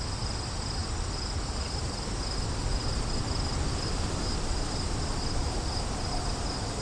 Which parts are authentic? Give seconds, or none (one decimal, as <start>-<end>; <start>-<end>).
0.0-6.8